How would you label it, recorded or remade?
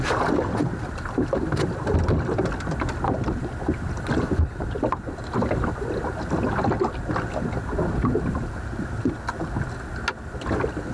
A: recorded